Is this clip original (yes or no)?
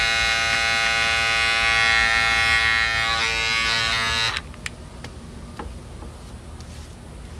yes